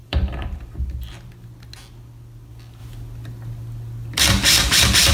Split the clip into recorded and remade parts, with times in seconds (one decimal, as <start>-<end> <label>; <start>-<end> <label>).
0.0-1.3 remade; 1.3-5.1 recorded